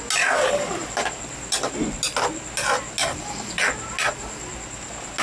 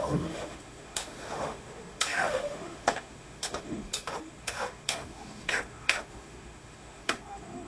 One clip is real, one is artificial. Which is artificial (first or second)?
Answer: second